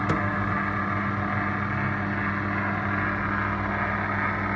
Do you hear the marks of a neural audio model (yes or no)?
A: no